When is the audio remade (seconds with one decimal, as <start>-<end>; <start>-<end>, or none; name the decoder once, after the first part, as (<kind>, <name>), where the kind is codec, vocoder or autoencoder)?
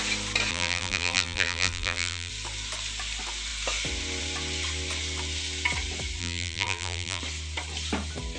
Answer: 0.5-2.3 (vocoder, BigVGAN v2); 6.2-7.2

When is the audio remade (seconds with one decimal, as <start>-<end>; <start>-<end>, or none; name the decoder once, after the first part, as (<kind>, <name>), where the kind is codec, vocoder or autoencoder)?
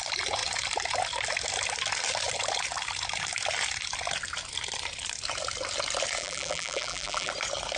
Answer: 6.2-7.3 (vocoder, BigVGAN v2)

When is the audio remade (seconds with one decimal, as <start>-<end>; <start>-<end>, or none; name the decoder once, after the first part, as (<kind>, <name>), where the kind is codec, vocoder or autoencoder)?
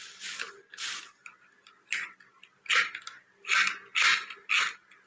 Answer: none